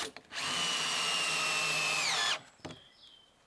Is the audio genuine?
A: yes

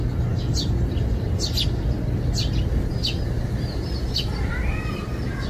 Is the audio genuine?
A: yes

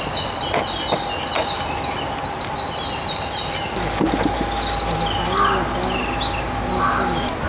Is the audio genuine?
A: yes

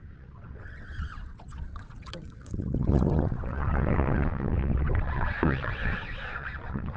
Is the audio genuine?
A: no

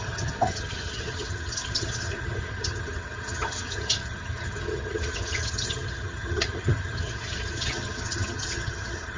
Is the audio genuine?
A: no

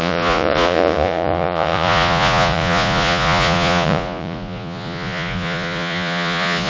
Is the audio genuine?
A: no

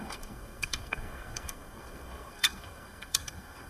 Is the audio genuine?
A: no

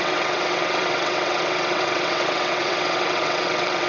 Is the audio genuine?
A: no